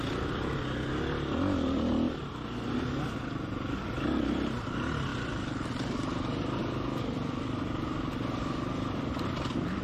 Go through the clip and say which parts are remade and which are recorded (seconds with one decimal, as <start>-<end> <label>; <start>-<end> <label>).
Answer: 0.0-9.8 recorded